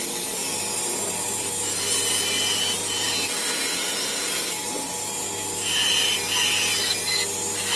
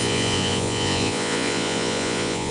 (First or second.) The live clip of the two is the first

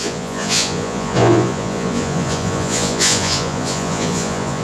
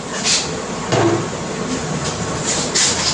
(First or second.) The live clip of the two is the second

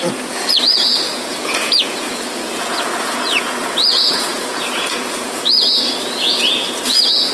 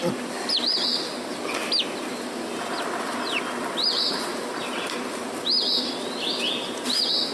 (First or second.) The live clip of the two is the second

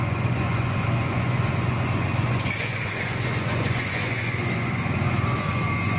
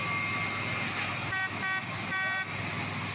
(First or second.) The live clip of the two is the second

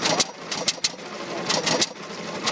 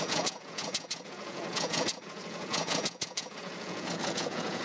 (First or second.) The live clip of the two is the first